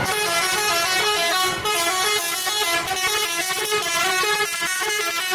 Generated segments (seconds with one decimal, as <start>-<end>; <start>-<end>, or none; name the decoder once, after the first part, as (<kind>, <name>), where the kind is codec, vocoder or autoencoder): 1.0-1.6 (codec, SNAC)